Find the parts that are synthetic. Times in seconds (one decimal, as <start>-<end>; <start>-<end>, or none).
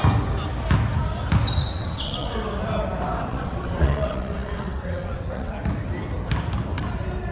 1.7-2.3; 3.3-5.5